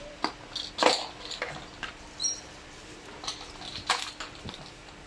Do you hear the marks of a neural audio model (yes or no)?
no